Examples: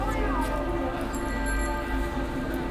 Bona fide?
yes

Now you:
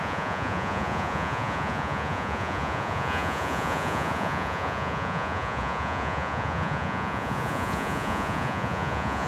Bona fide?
no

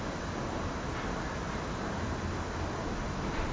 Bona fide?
yes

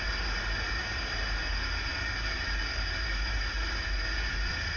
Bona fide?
yes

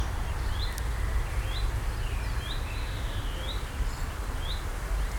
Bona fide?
yes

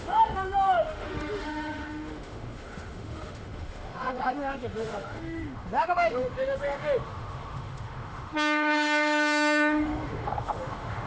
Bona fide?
no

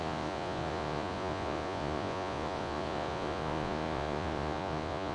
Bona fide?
no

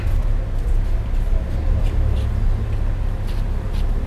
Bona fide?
yes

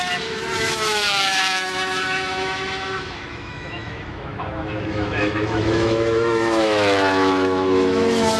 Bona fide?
no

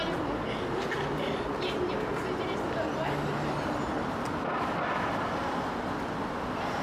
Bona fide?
yes